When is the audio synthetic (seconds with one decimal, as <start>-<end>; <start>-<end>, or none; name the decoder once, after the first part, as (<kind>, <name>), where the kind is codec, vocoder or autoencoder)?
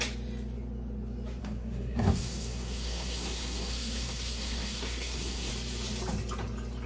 1.4-5.5 (codec, SNAC)